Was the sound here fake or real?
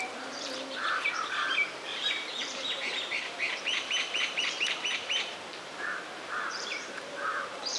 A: fake